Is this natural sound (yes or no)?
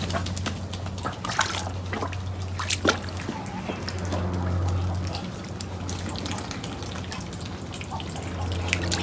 yes